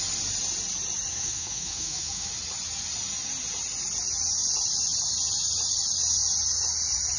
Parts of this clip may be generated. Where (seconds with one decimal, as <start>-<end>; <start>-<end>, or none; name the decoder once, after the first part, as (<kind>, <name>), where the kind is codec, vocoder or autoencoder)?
1.1-2.3 (autoencoder, DAC-VAE)